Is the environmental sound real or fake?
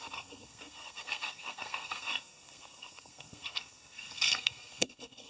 fake